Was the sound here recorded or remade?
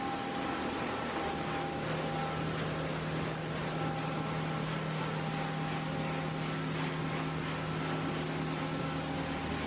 recorded